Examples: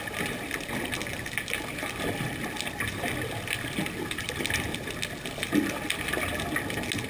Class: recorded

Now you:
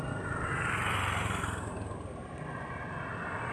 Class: recorded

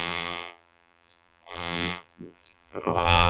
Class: remade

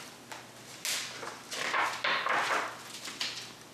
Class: recorded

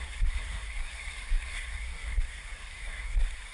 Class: remade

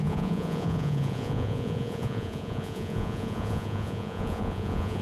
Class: remade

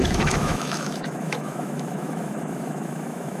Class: remade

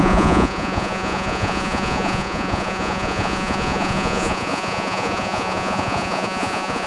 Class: remade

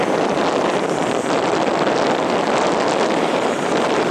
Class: recorded